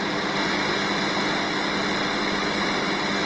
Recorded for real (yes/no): yes